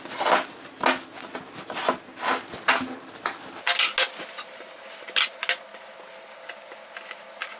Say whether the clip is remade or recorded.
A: recorded